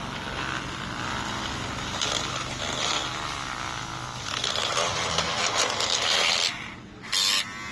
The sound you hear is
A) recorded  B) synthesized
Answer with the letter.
A